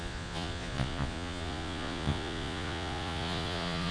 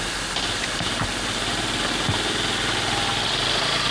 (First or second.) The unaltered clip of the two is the second